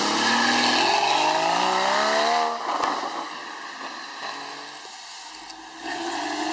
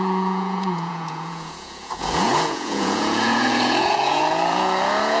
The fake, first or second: second